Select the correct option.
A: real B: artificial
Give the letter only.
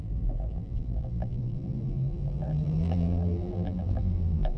B